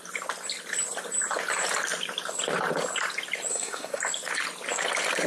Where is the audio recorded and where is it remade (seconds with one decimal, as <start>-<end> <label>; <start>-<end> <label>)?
0.0-3.5 recorded; 3.5-4.0 remade; 4.0-5.3 recorded